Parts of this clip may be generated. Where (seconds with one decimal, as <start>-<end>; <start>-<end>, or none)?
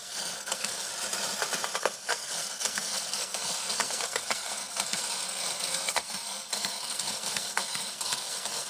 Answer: 0.0-0.9; 1.8-8.7